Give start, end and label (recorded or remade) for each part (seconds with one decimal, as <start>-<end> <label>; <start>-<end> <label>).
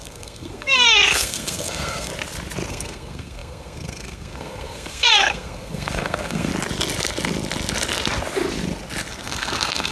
0.0-2.1 remade; 2.1-2.7 recorded; 2.7-6.5 remade; 6.5-9.1 recorded; 9.1-9.9 remade